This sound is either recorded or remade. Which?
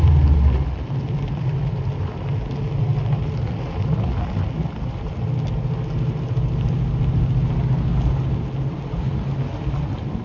recorded